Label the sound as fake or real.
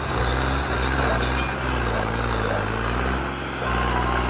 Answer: real